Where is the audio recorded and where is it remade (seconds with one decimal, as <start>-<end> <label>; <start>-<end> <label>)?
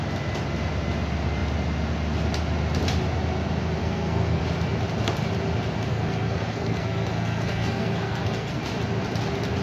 0.0-3.8 recorded; 3.8-4.4 remade; 4.4-5.9 recorded; 5.9-8.6 remade; 8.6-9.6 recorded